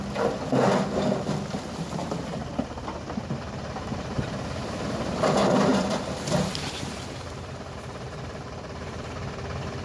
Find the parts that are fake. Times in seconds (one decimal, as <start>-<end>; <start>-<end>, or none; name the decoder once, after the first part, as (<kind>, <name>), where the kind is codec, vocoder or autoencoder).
2.0-4.9 (vocoder, BigVGAN v2); 5.7-9.3